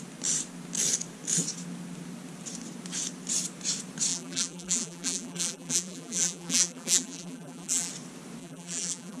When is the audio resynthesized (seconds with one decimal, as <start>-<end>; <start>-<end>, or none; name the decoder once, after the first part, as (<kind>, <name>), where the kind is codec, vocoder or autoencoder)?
4.1-7.9 (vocoder, BigVGAN v2); 8.4-9.2